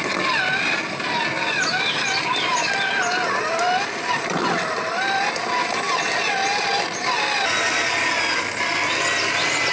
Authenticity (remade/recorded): recorded